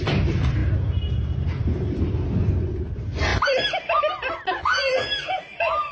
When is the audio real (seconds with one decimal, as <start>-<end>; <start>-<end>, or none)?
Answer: 0.0-5.9